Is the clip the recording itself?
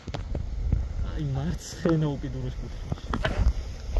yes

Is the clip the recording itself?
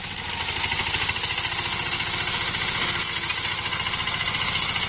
yes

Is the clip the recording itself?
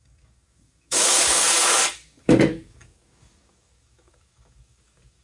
no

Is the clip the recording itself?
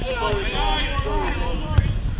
yes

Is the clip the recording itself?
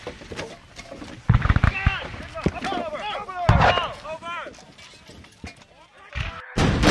yes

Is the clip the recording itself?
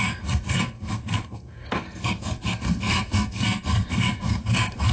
no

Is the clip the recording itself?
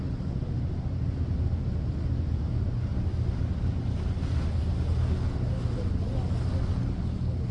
yes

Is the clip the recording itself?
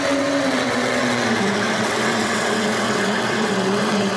no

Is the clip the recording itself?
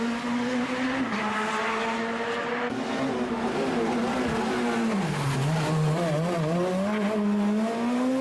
yes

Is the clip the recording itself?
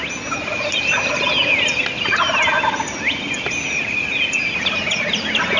yes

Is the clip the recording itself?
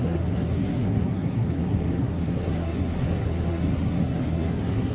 no